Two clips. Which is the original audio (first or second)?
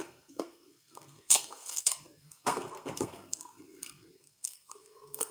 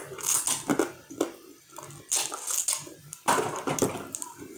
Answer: second